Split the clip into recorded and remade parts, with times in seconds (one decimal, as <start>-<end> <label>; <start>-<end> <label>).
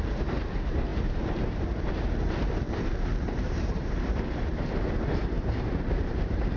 0.0-6.6 remade